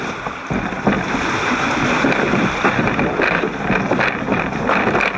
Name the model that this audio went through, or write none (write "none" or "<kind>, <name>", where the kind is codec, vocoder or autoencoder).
none